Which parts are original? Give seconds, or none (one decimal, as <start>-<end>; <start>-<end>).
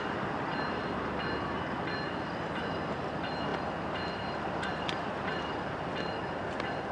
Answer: 0.0-6.9